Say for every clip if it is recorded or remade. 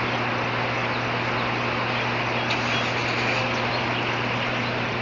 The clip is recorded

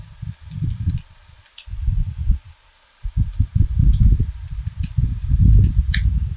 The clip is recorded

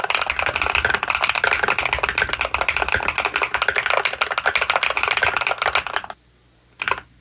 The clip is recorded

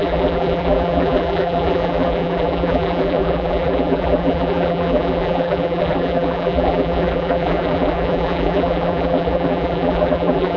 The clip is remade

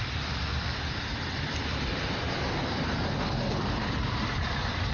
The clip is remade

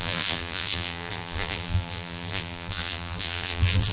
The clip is remade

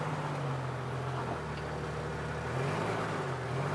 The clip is recorded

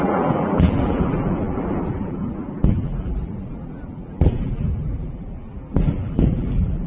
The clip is remade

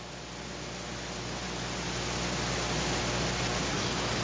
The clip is recorded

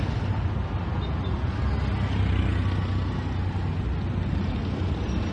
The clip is recorded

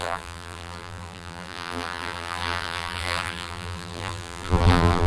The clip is remade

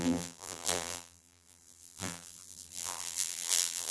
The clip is remade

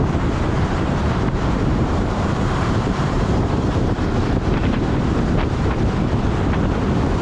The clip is remade